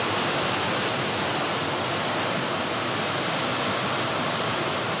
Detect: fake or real real